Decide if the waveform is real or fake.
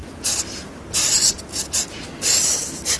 real